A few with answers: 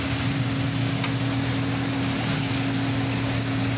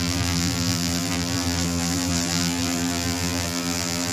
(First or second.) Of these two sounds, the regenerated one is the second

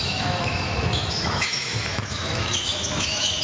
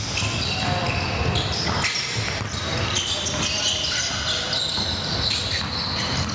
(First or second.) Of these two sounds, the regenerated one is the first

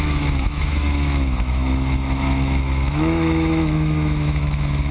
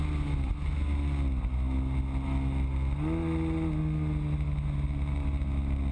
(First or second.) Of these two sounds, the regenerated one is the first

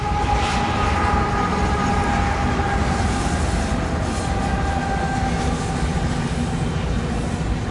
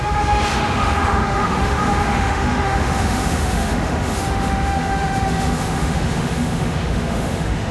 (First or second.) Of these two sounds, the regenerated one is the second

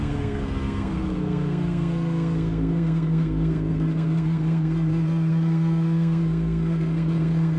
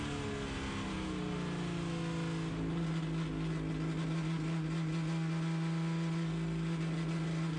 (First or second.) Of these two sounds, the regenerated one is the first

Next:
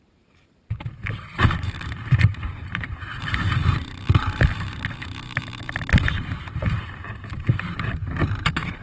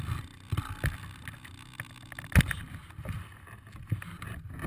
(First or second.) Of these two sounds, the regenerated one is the first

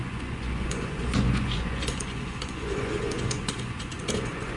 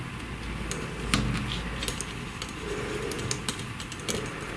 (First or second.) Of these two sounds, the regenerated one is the first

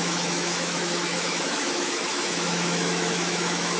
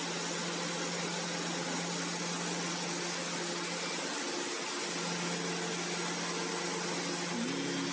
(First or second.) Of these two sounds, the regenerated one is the first